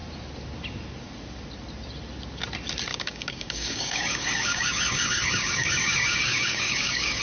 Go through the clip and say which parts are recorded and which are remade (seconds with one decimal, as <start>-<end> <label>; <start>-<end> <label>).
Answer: 0.0-2.9 recorded; 2.9-7.2 remade